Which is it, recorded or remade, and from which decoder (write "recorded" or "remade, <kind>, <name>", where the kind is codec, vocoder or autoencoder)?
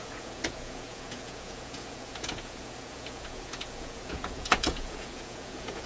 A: remade, vocoder, Vocos